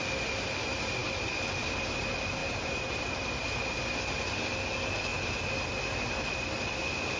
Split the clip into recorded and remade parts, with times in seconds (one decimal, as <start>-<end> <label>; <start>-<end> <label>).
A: 0.0-2.4 recorded; 2.4-3.2 remade; 3.2-7.2 recorded